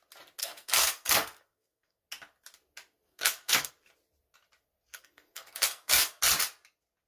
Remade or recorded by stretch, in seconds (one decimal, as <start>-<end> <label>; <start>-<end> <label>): 0.0-0.4 recorded; 0.4-2.0 remade; 2.0-3.1 recorded; 3.1-3.7 remade; 3.7-4.9 recorded; 4.9-6.2 remade; 6.2-7.1 recorded